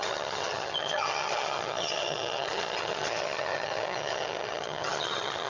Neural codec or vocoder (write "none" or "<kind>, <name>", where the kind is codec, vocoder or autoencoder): vocoder, HiFi-GAN